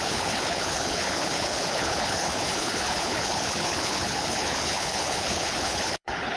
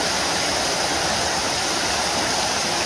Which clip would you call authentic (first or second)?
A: second